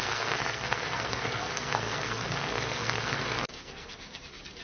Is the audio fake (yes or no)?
yes